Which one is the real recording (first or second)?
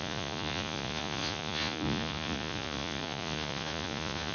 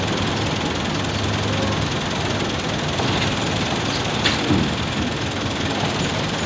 second